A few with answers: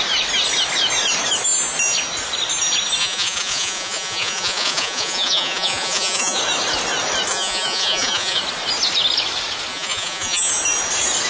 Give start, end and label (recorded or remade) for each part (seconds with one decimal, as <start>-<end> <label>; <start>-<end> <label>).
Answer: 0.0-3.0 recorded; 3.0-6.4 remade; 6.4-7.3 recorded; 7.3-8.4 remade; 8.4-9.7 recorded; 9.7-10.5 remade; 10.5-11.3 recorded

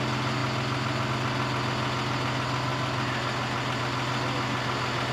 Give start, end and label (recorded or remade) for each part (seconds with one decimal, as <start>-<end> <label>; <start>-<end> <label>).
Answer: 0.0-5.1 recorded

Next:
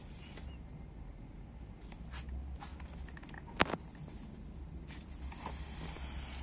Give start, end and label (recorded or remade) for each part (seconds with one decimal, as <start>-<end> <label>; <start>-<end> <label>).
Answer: 0.0-6.4 recorded